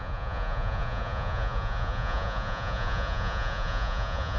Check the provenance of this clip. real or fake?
fake